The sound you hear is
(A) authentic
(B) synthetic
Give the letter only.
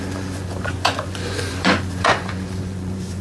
B